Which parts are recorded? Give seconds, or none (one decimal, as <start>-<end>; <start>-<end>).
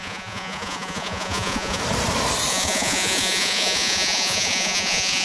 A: 1.8-2.5